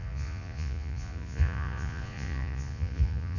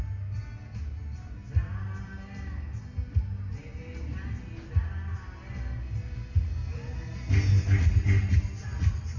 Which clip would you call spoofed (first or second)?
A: first